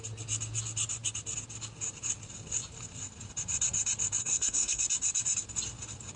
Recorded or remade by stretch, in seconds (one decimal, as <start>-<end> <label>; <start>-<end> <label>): 0.0-4.2 recorded; 4.2-4.8 remade; 4.8-6.2 recorded